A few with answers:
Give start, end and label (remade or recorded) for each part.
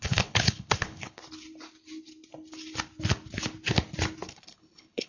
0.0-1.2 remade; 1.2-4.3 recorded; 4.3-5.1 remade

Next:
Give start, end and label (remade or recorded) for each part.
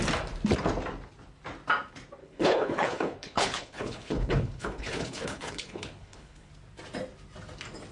0.0-2.2 recorded; 2.2-6.5 remade; 6.5-7.9 recorded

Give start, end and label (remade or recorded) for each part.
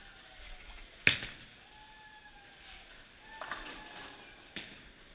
0.0-5.1 recorded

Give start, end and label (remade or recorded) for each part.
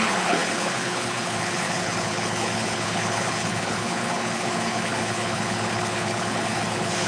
0.0-7.1 remade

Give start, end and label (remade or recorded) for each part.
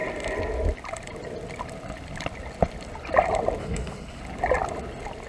0.0-3.6 recorded; 3.6-4.2 remade; 4.2-5.3 recorded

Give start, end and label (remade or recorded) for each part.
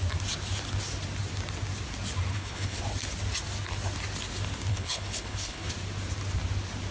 0.0-2.3 recorded; 2.3-2.8 remade; 2.8-4.7 recorded; 4.7-5.7 remade; 5.7-6.9 recorded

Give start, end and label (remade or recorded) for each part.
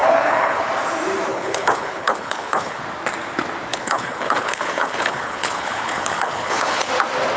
0.0-0.7 remade; 0.7-1.3 recorded; 1.3-2.8 remade; 2.8-3.7 recorded; 3.7-6.9 remade; 6.9-7.4 recorded